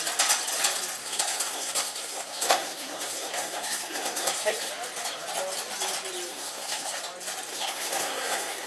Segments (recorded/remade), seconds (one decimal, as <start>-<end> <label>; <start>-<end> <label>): 0.0-1.0 recorded; 1.0-4.7 remade; 4.7-6.3 recorded; 6.3-7.0 remade; 7.0-7.5 recorded; 7.5-8.7 remade